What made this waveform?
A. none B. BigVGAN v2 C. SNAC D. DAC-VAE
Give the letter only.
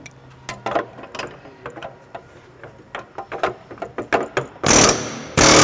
A